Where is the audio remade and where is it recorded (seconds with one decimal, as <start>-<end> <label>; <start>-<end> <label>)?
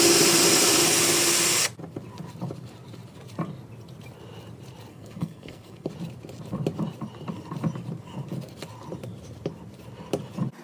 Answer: 0.0-4.9 recorded; 4.9-5.9 remade; 5.9-10.6 recorded